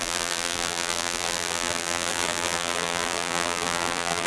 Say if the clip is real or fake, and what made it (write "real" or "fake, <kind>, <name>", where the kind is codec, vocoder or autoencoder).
fake, vocoder, BigVGAN v2